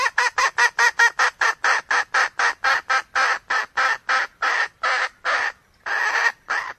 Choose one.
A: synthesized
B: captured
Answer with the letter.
B